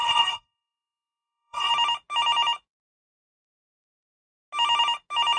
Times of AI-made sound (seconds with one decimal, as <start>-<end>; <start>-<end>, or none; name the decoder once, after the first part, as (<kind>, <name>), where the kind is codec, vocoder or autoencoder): 0.0-1.7 (codec, SNAC)